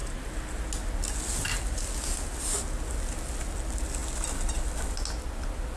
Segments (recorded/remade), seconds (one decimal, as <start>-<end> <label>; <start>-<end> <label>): 0.0-5.8 recorded